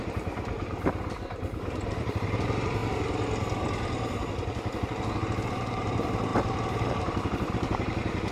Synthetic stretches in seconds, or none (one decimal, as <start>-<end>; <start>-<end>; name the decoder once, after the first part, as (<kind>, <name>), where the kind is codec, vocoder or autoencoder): 0.0-2.8 (vocoder, BigVGAN v2); 5.5-8.3